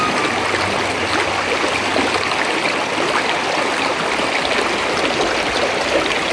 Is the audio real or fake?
real